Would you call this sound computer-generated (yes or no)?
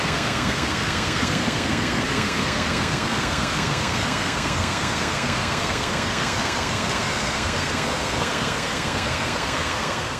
yes